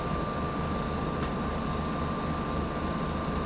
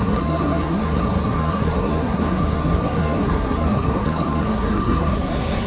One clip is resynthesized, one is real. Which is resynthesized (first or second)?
second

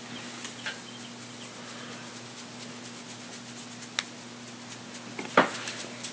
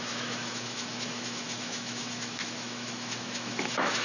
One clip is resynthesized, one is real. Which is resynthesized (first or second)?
second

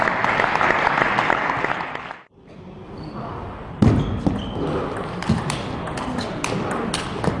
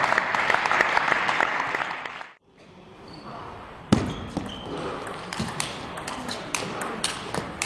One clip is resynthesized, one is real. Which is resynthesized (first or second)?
second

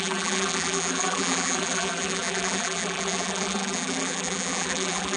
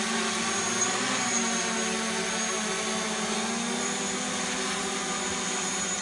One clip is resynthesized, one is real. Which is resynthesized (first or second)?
first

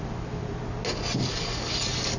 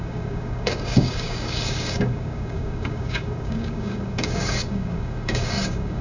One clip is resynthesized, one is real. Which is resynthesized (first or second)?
second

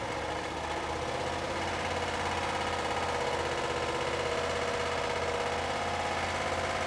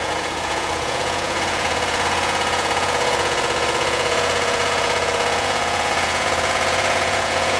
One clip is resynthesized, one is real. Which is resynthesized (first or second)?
second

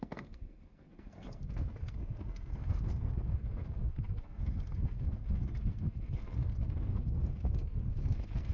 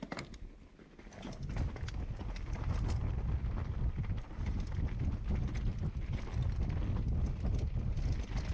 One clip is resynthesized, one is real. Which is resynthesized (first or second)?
first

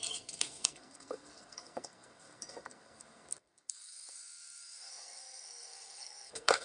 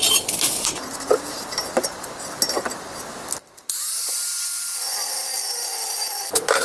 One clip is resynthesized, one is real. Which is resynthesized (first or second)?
first